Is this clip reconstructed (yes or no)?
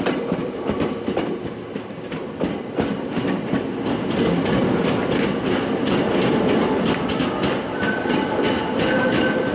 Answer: no